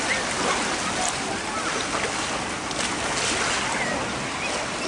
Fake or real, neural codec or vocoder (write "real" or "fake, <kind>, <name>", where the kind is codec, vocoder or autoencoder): real